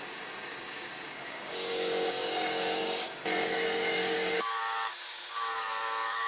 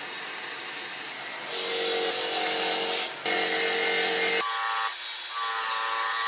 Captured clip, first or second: second